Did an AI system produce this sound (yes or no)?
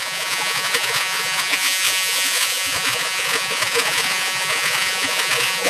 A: yes